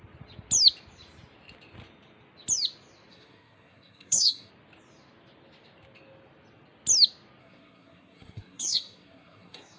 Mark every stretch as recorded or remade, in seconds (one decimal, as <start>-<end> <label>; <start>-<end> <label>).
0.0-3.1 recorded; 3.1-4.5 remade; 4.5-7.4 recorded; 7.4-9.8 remade